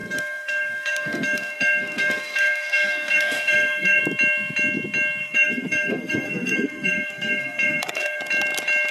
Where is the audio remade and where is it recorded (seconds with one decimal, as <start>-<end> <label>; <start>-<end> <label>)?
0.0-4.0 remade; 4.0-5.2 recorded; 5.2-8.2 remade; 8.2-8.9 recorded